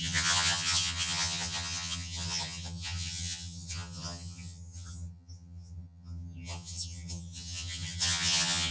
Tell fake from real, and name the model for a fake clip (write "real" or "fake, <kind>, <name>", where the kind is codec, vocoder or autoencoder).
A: fake, vocoder, HiFi-GAN